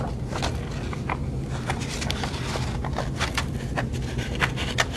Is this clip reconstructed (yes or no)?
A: no